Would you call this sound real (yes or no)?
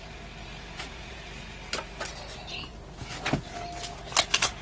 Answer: yes